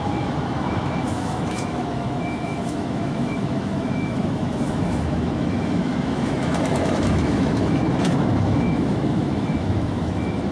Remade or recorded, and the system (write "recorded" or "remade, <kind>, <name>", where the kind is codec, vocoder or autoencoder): remade, autoencoder, DAC-VAE